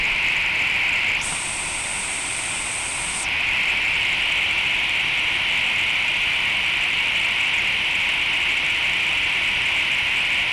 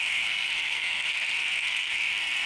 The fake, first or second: second